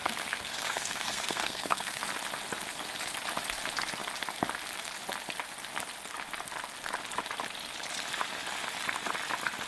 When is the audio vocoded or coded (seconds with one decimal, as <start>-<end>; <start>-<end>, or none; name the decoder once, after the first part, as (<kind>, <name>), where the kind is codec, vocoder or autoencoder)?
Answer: 0.0-2.0 (codec, SNAC)